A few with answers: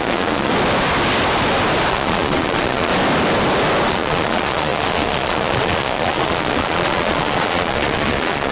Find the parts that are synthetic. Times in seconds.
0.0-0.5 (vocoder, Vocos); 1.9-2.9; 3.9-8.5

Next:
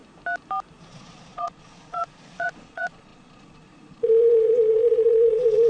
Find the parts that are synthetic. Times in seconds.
0.9-5.7 (vocoder, Vocos)

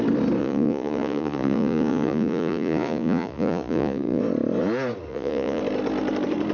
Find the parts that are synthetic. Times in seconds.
0.4-4.2 (vocoder, Vocos); 5.1-5.6

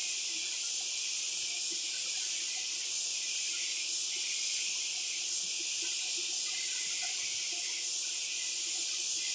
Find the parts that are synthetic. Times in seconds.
8.8-9.3 (vocoder, Vocos)